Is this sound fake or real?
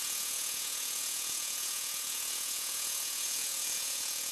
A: fake